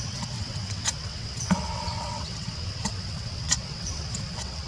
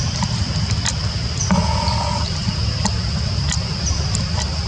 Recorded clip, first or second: second